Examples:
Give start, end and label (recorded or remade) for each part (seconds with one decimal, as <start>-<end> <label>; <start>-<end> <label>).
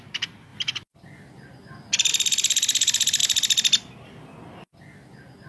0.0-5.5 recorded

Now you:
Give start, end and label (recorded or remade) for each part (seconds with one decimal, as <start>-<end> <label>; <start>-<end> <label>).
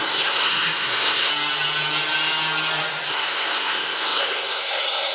0.0-1.3 remade; 1.3-3.1 recorded; 3.1-5.1 remade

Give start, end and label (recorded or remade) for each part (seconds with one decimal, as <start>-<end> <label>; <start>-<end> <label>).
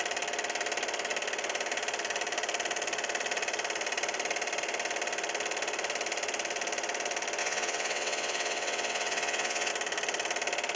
0.0-7.4 recorded; 7.4-9.7 remade; 9.7-10.8 recorded